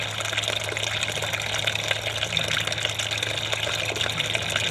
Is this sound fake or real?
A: real